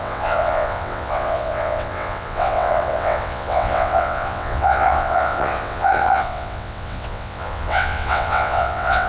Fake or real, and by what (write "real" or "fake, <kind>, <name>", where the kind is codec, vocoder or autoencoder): fake, vocoder, WaveNeXt